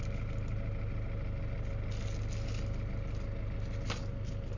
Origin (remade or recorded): recorded